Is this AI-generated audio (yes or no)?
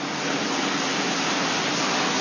no